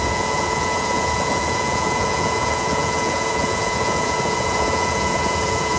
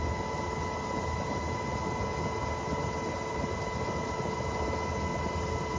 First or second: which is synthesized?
first